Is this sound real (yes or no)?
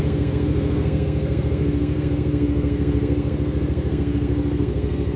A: no